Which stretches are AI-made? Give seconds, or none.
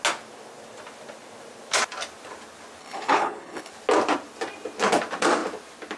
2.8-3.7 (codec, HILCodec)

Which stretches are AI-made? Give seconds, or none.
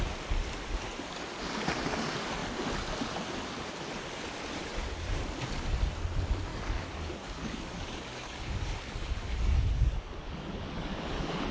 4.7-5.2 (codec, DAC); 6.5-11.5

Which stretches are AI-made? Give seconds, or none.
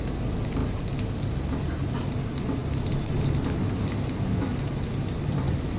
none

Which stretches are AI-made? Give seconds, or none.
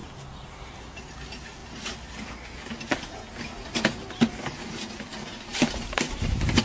none